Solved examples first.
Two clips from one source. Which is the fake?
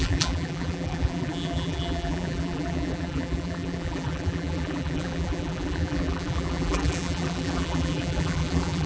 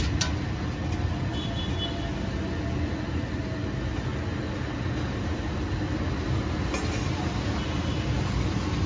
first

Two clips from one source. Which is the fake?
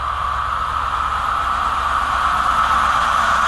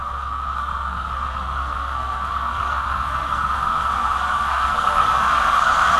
second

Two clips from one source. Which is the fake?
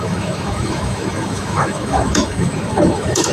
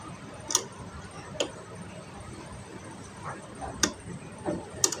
first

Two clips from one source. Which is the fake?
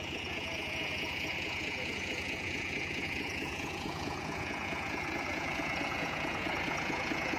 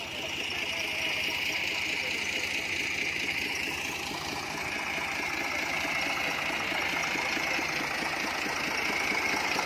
first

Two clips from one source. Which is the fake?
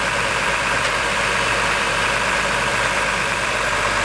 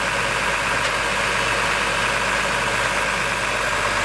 first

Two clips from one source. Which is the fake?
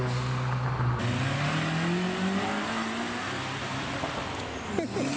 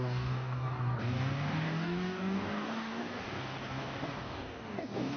second